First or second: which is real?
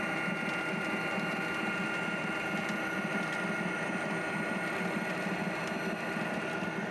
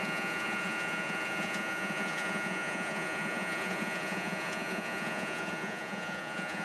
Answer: first